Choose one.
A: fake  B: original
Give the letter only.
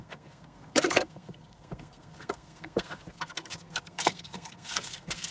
A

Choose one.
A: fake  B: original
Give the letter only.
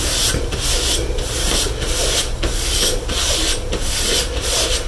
B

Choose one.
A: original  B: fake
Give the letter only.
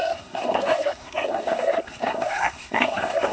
B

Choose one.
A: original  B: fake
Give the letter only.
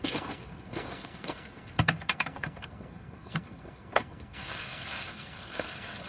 B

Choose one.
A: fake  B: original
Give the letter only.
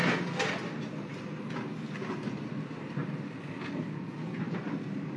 B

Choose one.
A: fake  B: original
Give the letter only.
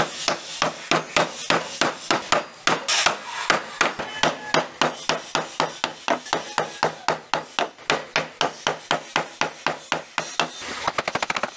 B